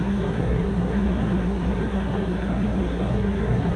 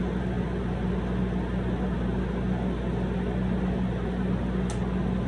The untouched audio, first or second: second